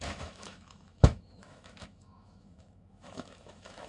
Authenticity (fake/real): fake